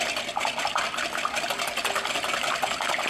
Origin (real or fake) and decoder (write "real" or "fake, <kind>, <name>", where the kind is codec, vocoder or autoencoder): real